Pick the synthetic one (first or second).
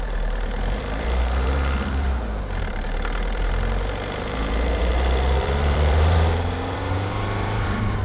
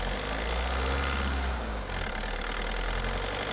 first